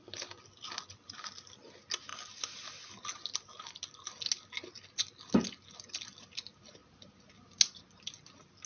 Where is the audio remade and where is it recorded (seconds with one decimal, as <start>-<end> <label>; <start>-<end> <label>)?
0.0-8.7 recorded